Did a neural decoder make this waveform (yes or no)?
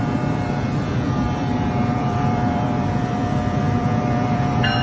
yes